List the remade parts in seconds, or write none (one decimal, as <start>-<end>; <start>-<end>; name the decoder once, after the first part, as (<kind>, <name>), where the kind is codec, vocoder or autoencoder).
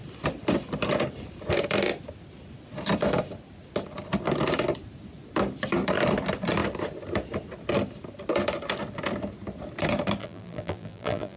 10.2-11.4 (vocoder, BigVGAN v2)